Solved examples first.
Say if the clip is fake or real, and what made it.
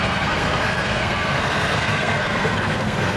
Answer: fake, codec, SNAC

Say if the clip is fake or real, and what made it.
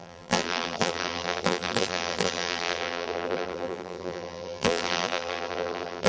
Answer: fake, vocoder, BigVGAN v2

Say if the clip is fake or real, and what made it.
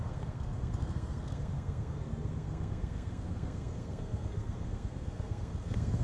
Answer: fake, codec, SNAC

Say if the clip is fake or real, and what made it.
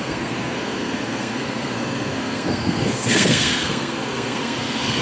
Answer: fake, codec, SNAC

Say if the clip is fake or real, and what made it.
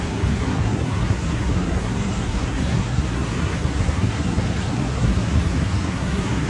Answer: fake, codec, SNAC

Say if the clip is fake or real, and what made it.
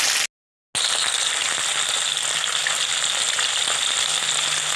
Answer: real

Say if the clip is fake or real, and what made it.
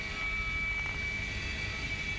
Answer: real